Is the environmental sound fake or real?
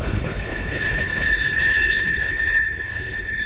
fake